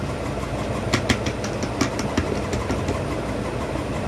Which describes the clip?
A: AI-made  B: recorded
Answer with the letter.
B